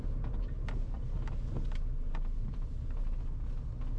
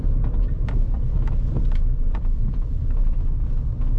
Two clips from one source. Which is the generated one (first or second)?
second